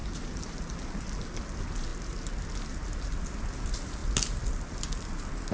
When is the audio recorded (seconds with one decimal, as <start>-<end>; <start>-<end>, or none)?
0.0-5.5